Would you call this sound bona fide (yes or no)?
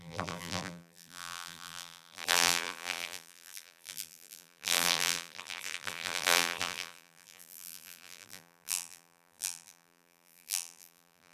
no